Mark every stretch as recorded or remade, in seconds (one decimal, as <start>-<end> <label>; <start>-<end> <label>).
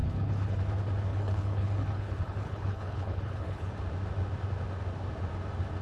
0.0-0.6 remade; 0.6-1.1 recorded; 1.1-3.7 remade; 3.7-5.8 recorded